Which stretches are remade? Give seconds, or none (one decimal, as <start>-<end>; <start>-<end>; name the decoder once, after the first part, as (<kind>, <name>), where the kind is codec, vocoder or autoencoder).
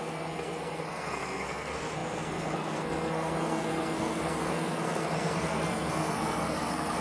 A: 0.0-7.0 (codec, SNAC)